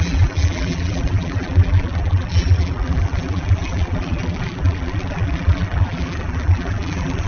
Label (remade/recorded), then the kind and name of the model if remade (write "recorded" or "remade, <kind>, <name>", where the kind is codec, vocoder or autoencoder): remade, vocoder, BigVGAN v2